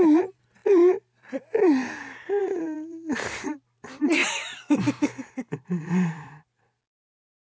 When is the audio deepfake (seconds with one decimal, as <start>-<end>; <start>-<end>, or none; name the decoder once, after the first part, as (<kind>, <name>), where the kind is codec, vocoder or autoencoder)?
4.2-6.8 (vocoder, BigVGAN v2)